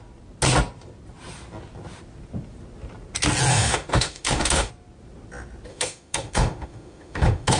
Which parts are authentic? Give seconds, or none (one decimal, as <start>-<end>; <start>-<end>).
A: 0.0-3.5; 4.7-5.7